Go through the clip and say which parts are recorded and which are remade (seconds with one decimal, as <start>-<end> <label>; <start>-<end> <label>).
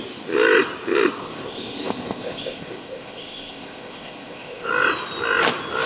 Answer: 0.0-1.2 recorded; 1.2-4.7 remade; 4.7-5.9 recorded